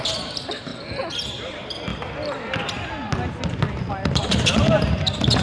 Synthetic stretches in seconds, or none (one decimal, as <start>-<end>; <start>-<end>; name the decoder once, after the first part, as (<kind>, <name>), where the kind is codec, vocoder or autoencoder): 0.0-0.7 (vocoder, BigVGAN v2); 1.5-1.9; 3.9-5.4